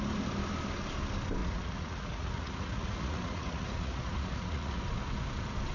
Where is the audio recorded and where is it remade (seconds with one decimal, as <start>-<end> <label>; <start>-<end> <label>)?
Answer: 0.0-1.4 recorded; 1.4-4.8 remade; 4.8-5.7 recorded

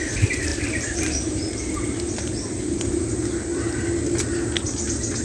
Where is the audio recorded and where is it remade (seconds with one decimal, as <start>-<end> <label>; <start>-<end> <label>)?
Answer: 0.0-0.5 recorded; 0.5-1.6 remade; 1.6-5.2 recorded